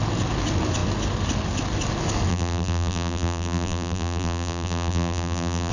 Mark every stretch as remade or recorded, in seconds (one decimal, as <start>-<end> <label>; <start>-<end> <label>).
0.0-2.3 recorded; 2.3-5.7 remade